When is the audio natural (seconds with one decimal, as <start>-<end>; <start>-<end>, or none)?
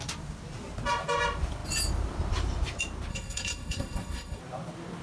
0.0-3.1; 4.4-5.0